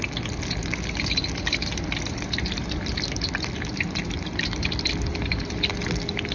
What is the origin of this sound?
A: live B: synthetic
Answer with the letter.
A